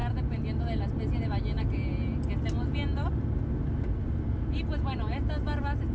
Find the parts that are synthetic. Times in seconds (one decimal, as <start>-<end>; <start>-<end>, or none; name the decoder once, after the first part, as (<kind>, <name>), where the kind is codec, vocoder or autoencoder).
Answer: none